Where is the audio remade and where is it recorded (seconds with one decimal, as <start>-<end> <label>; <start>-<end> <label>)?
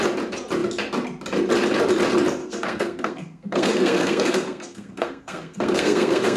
0.0-2.4 recorded; 2.4-6.4 remade